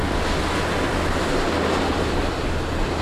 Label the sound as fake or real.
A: real